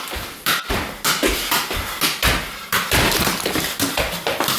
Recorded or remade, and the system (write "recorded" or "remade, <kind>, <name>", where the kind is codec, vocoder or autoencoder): recorded